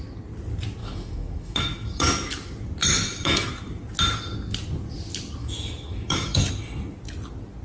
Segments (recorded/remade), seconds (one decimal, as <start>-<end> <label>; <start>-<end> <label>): 0.0-0.8 recorded; 0.8-2.3 remade; 2.3-2.8 recorded; 2.8-3.5 remade; 3.5-5.4 recorded; 5.4-6.5 remade; 6.5-7.6 recorded